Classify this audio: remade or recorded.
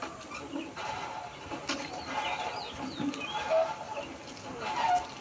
recorded